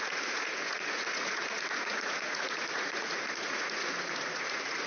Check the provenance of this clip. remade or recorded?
remade